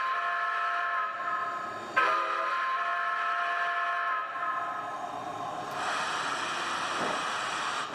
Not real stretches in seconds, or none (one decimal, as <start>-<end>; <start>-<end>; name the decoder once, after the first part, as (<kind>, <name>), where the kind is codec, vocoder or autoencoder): none